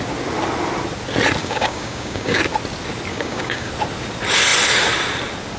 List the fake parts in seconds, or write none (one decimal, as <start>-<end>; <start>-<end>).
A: 1.4-2.4; 3.1-3.7